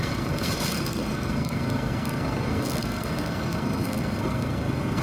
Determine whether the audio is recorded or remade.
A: remade